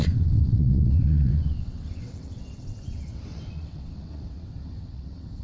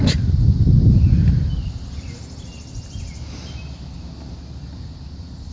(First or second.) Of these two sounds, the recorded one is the second